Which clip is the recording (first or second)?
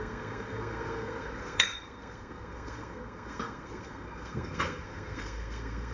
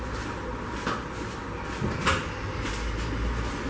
second